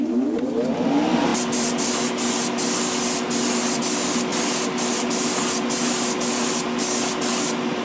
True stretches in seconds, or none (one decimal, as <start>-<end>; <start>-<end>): 0.0-7.8